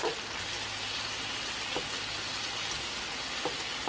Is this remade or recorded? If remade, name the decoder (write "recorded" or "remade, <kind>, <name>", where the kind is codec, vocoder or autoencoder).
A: recorded